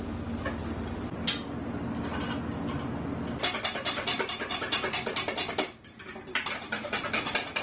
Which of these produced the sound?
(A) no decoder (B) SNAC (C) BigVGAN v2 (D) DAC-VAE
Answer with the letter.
A